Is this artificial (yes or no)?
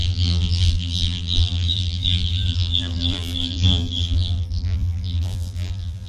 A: yes